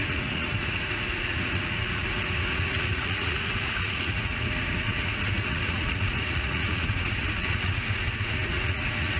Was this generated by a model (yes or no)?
yes